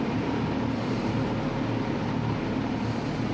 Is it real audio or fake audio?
real